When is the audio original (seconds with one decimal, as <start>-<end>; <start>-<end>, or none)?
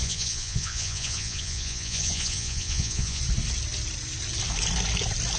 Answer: 3.2-5.4